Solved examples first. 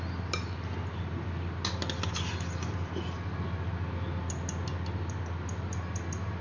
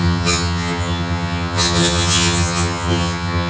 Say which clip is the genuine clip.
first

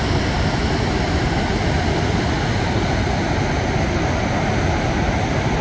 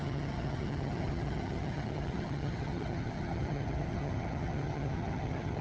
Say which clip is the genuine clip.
first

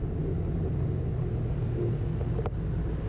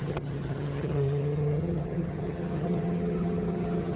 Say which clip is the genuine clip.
first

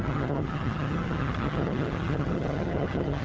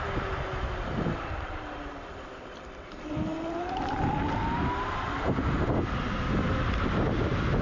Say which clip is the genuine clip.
second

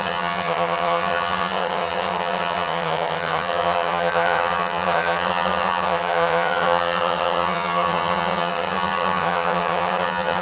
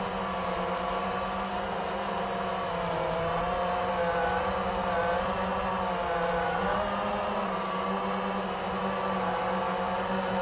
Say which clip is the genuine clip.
second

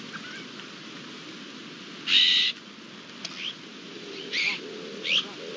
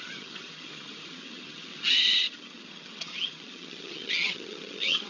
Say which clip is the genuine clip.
first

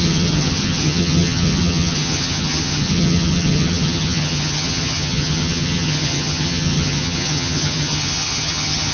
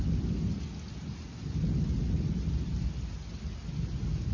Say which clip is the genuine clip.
second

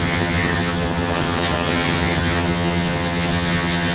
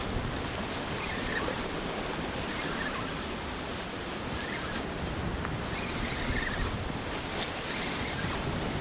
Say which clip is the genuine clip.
second